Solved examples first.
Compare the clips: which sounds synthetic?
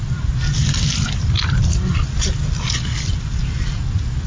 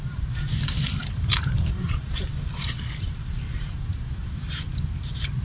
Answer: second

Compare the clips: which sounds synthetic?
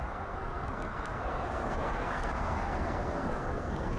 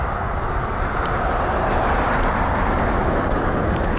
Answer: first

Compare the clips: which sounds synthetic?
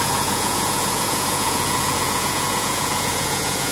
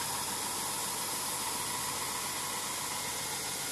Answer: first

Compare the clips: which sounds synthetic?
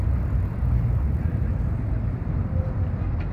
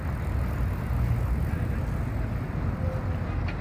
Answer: first